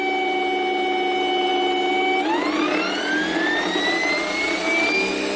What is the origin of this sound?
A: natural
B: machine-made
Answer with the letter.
A